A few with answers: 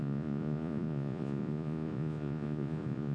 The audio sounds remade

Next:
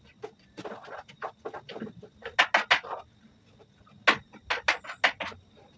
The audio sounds recorded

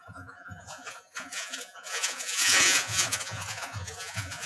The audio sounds remade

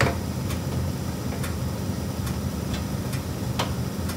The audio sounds recorded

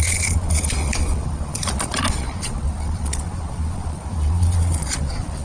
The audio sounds remade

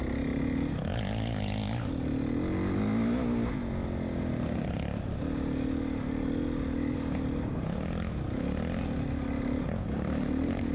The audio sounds recorded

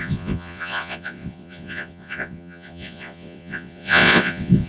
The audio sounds remade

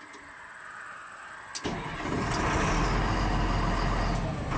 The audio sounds recorded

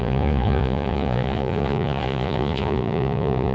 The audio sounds remade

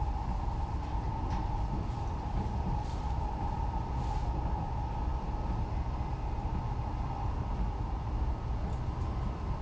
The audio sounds recorded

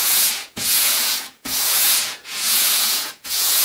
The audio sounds remade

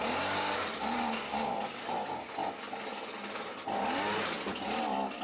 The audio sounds recorded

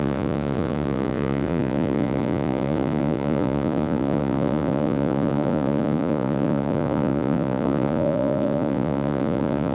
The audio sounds remade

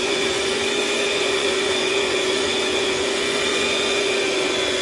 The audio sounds remade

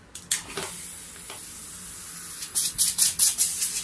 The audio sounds recorded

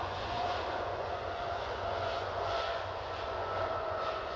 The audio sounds remade